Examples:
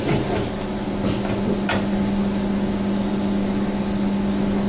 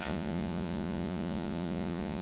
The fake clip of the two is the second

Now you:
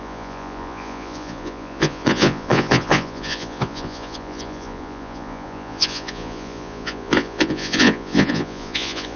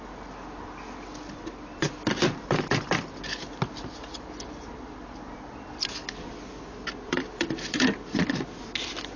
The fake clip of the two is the first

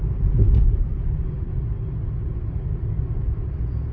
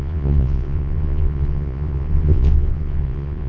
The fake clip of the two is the second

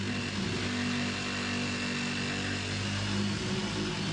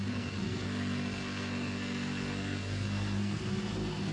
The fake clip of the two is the second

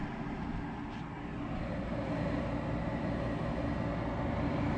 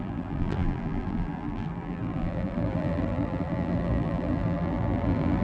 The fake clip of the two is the second